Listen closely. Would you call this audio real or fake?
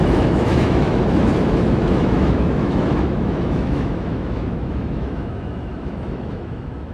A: fake